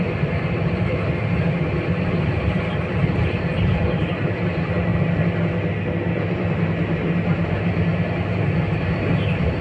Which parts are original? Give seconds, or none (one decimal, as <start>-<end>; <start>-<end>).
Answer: 4.9-6.0; 7.9-8.8